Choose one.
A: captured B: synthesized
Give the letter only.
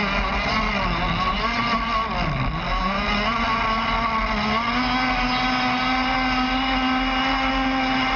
A